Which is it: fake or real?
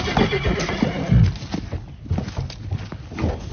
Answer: real